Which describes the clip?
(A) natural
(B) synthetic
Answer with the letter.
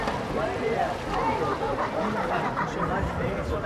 A